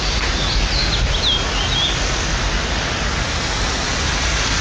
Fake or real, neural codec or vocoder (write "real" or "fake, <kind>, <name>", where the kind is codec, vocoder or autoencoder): real